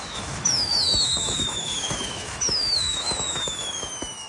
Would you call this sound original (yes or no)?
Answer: no